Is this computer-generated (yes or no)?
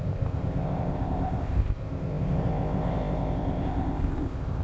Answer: yes